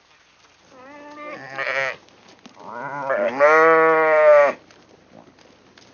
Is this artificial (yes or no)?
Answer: no